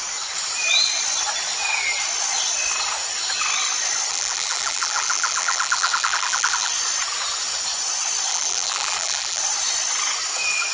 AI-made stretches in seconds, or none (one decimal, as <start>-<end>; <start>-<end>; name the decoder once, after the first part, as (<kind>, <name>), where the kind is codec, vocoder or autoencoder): 4.1-6.7 (vocoder, BigVGAN v2); 8.3-9.4

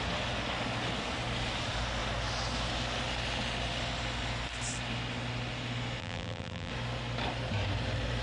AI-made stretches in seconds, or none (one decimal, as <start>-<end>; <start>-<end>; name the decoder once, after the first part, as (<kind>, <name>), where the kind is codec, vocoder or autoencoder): 6.0-6.7 (vocoder, BigVGAN v2)

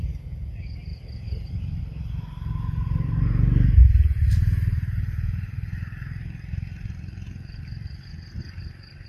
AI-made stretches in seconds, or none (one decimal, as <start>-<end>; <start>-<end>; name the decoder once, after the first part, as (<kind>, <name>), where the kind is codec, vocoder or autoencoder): 0.9-1.8 (vocoder, BigVGAN v2); 3.8-8.0

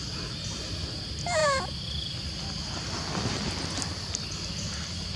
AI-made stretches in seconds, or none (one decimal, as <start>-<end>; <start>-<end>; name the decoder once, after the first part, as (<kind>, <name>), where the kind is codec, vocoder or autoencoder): 1.4-4.1 (vocoder, BigVGAN v2)

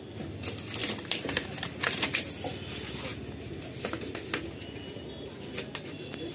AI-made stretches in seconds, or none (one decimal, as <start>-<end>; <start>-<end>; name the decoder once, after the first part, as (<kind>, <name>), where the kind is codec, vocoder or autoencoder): 0.8-2.3 (vocoder, BigVGAN v2)

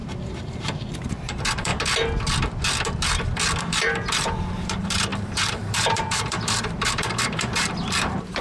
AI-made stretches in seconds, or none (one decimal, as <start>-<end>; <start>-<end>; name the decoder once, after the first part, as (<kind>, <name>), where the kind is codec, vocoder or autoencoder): 0.0-1.7 (vocoder, BigVGAN v2); 3.6-8.4

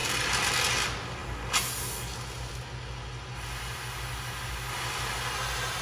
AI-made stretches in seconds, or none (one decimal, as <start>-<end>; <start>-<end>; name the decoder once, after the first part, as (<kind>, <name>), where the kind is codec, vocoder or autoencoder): none

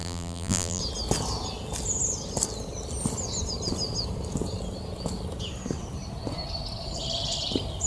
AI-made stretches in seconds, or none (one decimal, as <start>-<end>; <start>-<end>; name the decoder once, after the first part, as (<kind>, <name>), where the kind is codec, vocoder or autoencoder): 0.0-0.8 (vocoder, BigVGAN v2)